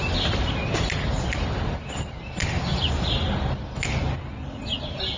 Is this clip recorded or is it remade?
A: recorded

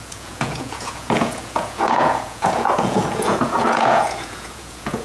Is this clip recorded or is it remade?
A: remade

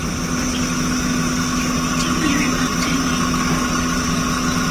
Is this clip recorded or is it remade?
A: recorded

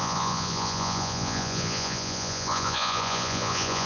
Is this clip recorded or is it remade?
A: remade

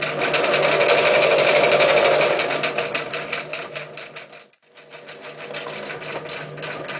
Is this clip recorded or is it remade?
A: recorded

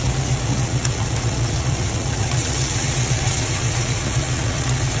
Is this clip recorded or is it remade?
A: remade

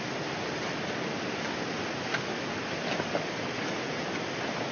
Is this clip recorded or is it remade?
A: recorded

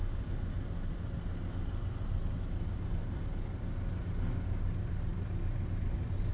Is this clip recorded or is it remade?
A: recorded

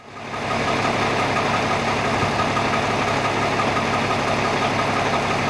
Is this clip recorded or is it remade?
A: recorded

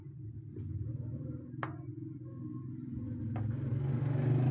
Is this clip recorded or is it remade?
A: recorded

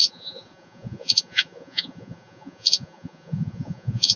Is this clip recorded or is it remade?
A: remade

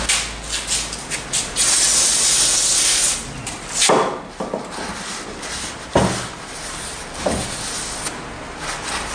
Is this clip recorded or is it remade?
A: recorded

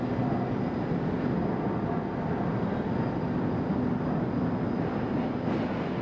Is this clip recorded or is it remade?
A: recorded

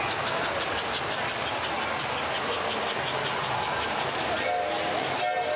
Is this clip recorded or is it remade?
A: recorded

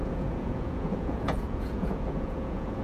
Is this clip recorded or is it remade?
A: remade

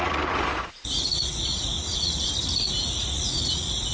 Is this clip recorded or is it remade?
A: remade